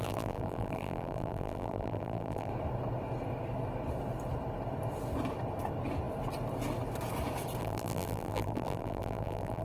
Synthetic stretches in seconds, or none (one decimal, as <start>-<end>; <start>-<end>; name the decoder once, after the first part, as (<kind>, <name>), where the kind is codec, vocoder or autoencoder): 0.0-2.5 (vocoder, BigVGAN v2); 7.6-9.6